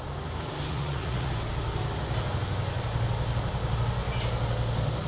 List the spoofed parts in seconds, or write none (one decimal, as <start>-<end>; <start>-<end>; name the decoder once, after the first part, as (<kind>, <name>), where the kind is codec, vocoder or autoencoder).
0.7-1.3 (vocoder, Vocos)

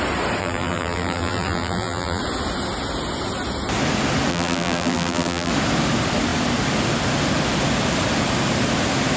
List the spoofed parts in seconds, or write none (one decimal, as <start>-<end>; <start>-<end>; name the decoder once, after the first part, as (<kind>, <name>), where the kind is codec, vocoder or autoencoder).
0.4-2.2 (vocoder, BigVGAN v2); 4.3-5.5